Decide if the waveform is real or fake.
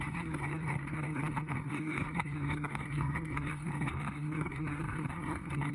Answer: fake